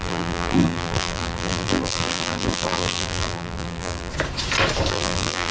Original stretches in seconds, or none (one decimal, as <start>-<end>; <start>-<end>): 4.1-4.9